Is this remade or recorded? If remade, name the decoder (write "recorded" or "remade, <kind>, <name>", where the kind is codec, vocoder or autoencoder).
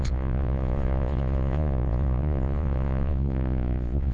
remade, vocoder, Vocos